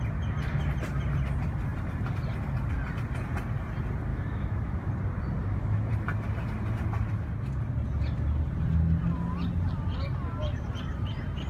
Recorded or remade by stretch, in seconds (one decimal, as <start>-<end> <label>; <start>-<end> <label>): 0.0-4.1 recorded; 4.1-4.9 remade; 4.9-5.4 recorded; 5.4-5.9 remade; 5.9-11.5 recorded